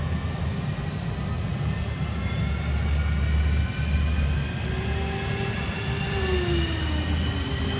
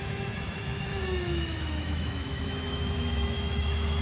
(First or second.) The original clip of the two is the first